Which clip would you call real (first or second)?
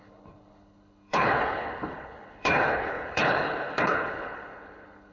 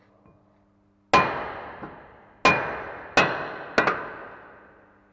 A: second